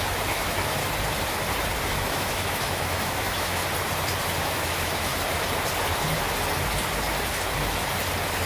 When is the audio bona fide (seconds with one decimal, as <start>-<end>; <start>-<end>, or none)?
0.8-1.9; 3.6-4.4; 5.1-8.5